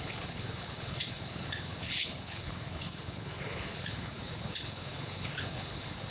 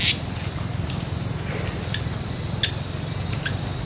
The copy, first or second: first